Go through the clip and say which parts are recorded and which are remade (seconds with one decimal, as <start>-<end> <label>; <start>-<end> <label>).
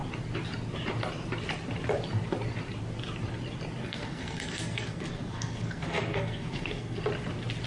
0.0-3.8 recorded; 3.8-7.0 remade; 7.0-7.7 recorded